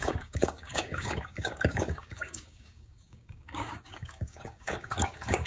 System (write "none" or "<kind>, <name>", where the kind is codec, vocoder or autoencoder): codec, DAC